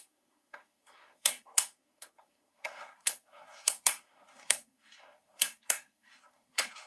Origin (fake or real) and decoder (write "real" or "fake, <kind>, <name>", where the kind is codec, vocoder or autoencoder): fake, codec, SNAC